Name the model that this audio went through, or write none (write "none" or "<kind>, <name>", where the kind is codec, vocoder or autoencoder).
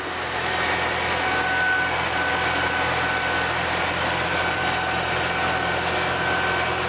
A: none